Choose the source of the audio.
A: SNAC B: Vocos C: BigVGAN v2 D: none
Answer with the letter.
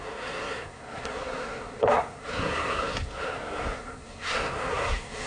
A